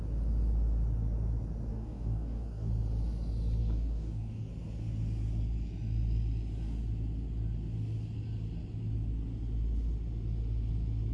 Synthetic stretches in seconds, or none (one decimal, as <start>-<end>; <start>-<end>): 1.7-2.7; 3.6-4.5